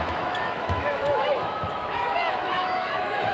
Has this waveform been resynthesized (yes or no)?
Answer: yes